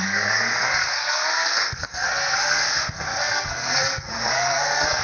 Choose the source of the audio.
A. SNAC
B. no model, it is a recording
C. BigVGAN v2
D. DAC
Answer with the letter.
A